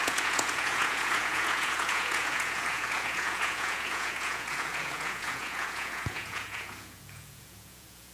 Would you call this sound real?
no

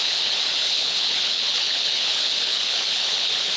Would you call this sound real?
no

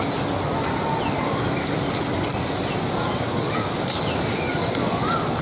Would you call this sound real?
yes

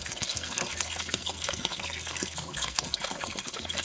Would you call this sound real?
no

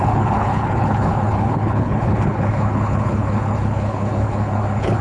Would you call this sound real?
no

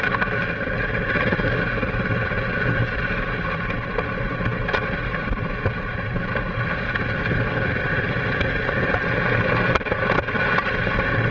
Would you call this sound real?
yes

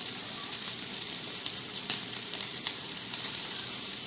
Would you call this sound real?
no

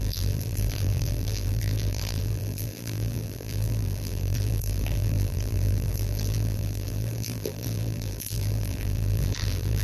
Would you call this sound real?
no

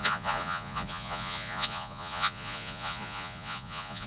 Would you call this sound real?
no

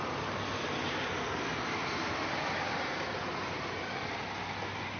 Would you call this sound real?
yes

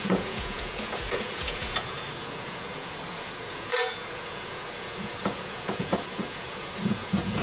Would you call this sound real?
no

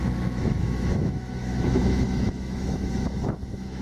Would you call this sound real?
no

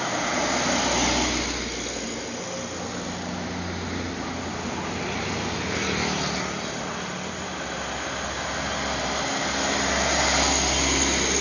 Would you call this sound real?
yes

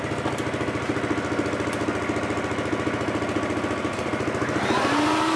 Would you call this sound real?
yes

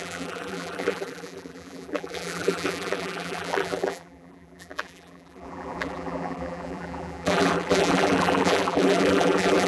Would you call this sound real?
no